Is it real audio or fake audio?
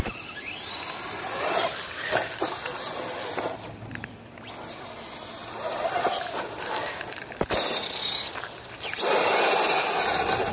real